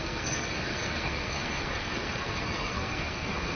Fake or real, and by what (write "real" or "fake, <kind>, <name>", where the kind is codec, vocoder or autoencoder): fake, codec, SNAC